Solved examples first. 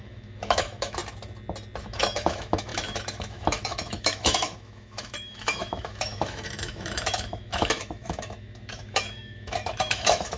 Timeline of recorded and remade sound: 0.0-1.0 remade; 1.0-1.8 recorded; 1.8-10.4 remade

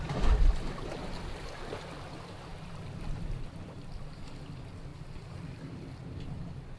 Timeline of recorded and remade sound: 0.0-2.5 recorded; 2.5-4.2 remade; 4.2-4.9 recorded; 4.9-6.0 remade; 6.0-6.8 recorded